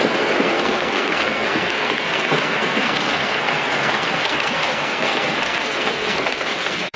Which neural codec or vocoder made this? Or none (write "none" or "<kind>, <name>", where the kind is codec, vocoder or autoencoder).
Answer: codec, SNAC